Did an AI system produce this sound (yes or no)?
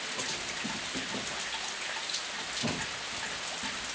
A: no